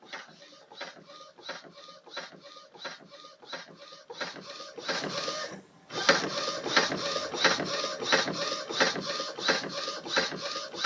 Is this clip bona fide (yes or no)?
yes